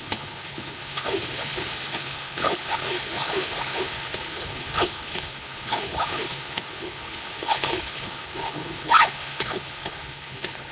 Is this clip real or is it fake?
fake